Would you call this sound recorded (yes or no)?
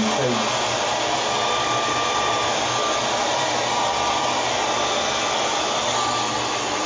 yes